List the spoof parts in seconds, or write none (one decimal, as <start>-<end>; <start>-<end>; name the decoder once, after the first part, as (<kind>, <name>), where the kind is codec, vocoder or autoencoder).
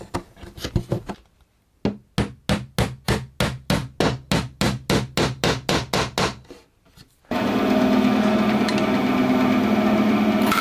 none